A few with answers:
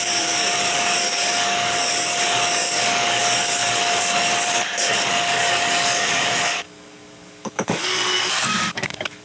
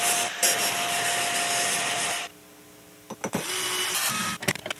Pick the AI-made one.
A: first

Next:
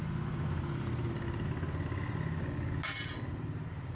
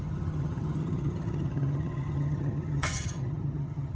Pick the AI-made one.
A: second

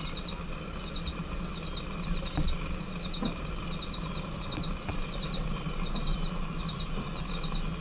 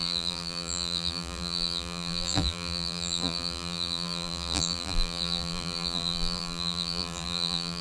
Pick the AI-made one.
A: second